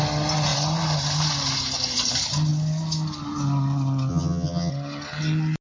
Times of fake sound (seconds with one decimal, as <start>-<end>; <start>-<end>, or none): 4.1-4.7